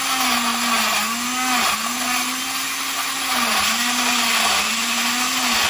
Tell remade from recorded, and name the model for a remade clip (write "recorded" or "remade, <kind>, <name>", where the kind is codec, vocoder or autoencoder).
recorded